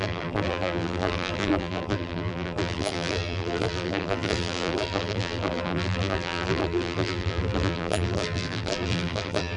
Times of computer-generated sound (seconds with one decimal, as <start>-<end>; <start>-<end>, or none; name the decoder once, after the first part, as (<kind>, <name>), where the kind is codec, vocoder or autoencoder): 0.0-9.6 (vocoder, BigVGAN v2)